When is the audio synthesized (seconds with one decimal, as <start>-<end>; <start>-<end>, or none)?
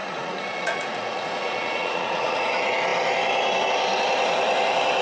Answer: 0.0-2.5